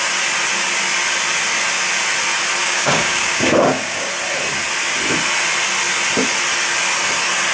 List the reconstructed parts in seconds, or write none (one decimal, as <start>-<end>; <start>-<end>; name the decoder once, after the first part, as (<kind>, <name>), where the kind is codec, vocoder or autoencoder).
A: 2.6-4.1 (codec, DAC)